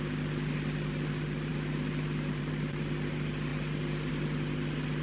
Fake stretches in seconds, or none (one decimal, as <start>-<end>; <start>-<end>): none